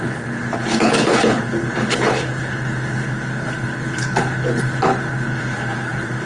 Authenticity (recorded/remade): remade